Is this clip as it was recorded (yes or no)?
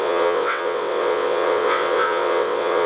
no